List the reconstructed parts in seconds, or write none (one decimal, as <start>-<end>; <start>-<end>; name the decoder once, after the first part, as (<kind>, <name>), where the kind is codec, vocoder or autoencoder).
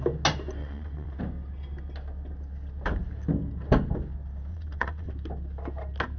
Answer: 0.6-1.2 (vocoder, WaveNeXt); 4.5-5.1